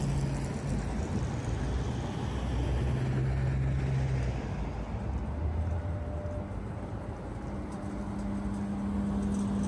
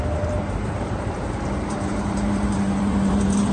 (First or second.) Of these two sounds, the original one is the first